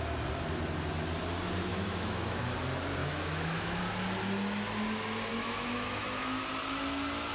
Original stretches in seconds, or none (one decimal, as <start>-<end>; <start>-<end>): 0.0-1.7; 2.4-3.0; 3.8-5.3; 6.5-7.3